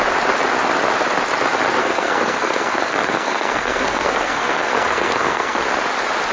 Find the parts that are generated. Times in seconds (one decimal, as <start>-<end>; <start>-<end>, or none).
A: 1.8-5.6